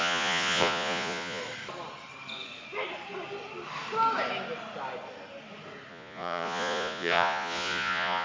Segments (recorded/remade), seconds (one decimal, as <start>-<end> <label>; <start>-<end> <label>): 0.0-1.4 remade; 1.4-5.9 recorded; 5.9-8.2 remade